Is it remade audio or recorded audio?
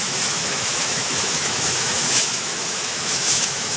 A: remade